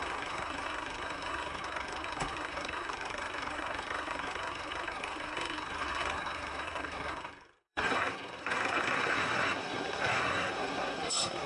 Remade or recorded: remade